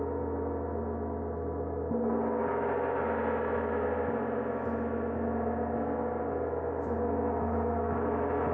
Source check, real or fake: real